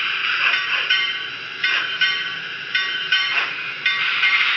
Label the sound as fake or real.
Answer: fake